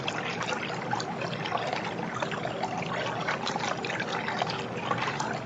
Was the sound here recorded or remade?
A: recorded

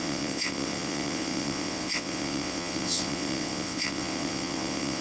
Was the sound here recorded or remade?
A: remade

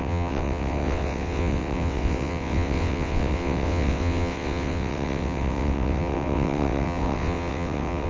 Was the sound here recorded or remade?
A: remade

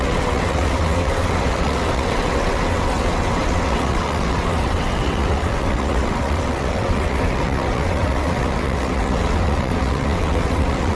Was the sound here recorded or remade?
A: remade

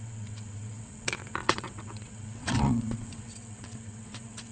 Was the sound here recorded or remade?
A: remade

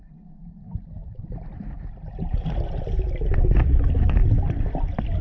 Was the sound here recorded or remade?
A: recorded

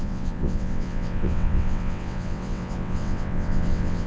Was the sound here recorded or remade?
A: remade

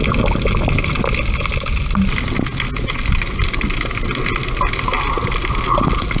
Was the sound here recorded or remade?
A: recorded